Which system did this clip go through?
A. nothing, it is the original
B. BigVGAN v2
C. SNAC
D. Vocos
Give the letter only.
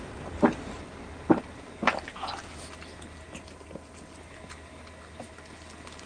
A